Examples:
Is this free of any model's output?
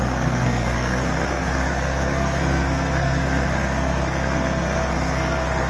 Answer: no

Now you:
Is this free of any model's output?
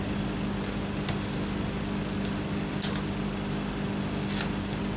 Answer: yes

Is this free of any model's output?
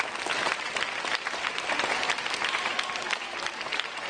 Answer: yes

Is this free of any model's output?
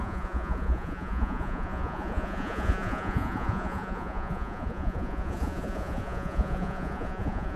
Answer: no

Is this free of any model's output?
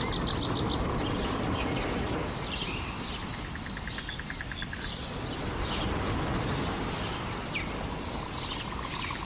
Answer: yes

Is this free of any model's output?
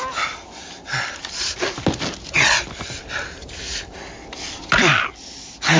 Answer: yes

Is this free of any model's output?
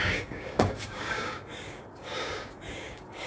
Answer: no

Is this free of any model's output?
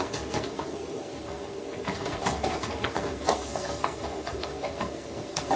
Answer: no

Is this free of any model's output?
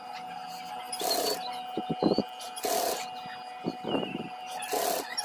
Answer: yes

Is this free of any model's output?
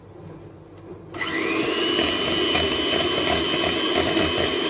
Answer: yes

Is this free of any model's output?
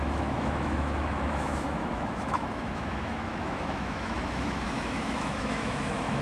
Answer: no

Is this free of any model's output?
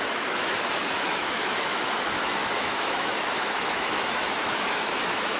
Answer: no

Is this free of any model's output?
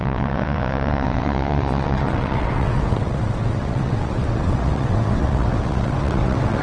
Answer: no